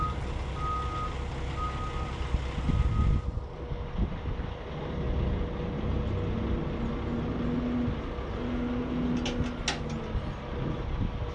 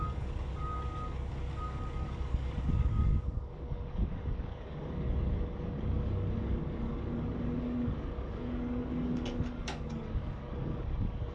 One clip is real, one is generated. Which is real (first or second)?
first